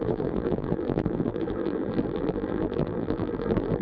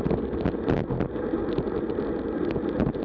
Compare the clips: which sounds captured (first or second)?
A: second